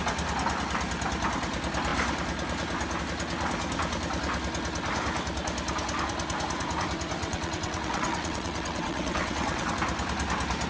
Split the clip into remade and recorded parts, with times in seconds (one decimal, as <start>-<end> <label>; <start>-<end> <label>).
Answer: 0.0-7.2 recorded; 7.2-9.7 remade; 9.7-10.7 recorded